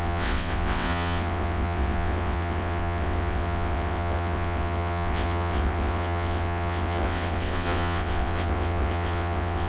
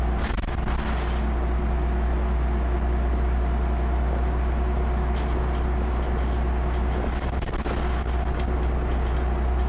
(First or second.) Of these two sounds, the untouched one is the second